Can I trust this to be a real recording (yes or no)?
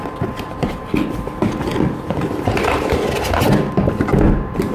yes